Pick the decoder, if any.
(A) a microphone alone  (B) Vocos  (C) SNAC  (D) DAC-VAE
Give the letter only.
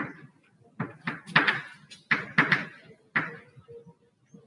A